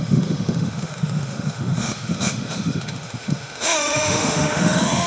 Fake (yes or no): yes